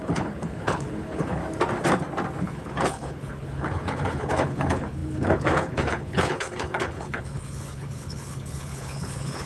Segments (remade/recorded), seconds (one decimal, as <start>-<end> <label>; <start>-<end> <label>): 0.0-1.4 remade; 1.4-2.4 recorded; 2.4-9.5 remade